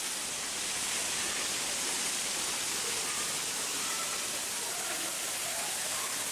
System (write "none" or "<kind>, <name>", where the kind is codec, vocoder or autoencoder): none